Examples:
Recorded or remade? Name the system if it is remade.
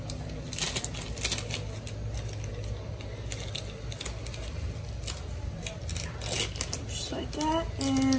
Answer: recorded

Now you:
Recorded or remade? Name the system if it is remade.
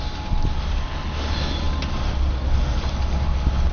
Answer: recorded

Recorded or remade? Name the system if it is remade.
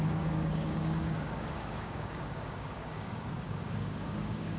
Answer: remade, codec, DAC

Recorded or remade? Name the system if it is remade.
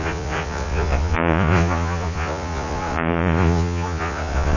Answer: remade, vocoder, Vocos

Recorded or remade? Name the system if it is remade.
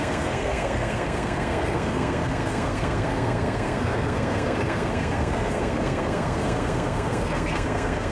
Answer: remade, codec, SNAC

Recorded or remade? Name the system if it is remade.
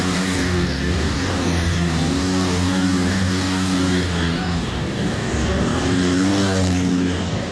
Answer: remade, codec, DAC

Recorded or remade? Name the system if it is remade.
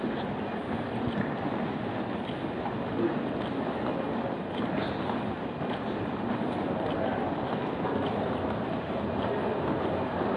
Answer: recorded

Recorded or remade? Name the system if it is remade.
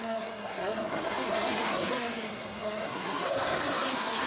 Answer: remade, codec, SNAC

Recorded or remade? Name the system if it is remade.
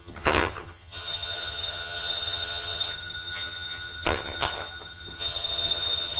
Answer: remade, vocoder, HiFi-GAN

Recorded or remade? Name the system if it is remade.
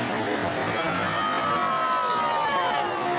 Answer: recorded